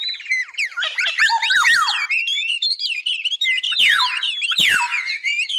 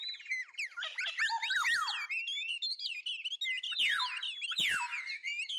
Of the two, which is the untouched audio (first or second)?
second